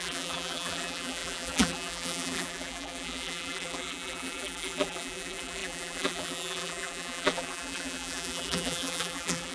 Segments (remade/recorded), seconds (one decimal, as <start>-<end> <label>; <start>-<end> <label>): 0.0-9.5 remade